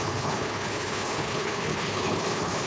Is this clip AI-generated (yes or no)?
yes